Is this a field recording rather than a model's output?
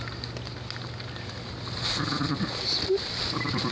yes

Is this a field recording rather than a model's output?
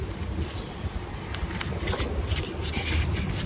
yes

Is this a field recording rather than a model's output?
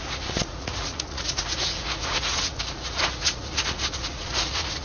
no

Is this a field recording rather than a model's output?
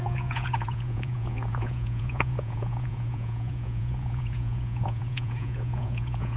no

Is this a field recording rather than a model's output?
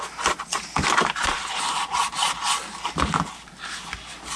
yes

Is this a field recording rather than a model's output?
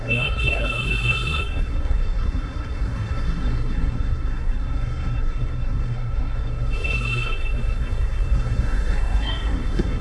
no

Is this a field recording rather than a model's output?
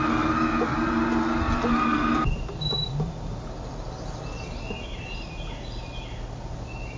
yes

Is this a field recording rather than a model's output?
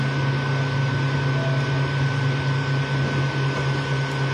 yes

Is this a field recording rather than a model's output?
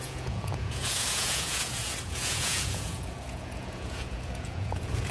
no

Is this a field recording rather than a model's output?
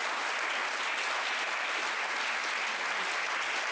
yes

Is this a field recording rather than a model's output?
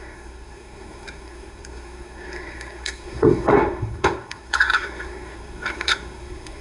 no